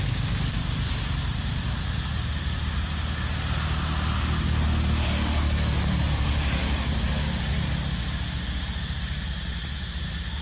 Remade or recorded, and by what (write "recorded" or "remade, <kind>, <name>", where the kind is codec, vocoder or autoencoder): recorded